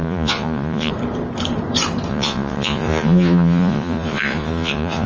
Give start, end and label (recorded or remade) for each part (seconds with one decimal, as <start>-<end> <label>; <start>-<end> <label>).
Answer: 0.0-0.9 remade; 0.9-2.1 recorded; 2.1-5.1 remade